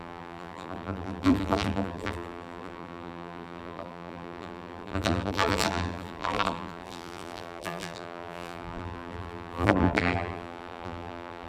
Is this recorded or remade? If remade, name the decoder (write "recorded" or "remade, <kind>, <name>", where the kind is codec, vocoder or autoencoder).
remade, vocoder, BigVGAN v2